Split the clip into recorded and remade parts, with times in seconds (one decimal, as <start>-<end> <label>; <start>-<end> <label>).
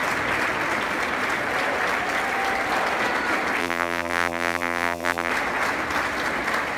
0.0-3.6 recorded; 3.6-5.3 remade; 5.3-6.8 recorded